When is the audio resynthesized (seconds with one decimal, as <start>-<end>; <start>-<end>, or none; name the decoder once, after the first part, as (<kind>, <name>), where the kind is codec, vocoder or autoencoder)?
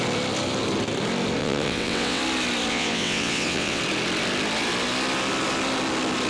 1.4-2.2 (vocoder, WaveNeXt); 2.7-3.8